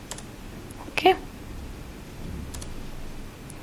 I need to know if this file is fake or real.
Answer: real